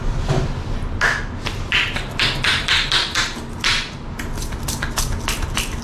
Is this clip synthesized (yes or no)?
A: no